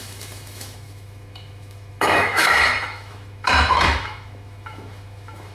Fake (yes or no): yes